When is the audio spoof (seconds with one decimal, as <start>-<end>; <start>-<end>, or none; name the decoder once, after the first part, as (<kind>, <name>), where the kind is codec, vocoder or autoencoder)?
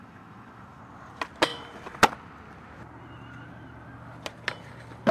0.0-0.8 (autoencoder, DAC-VAE)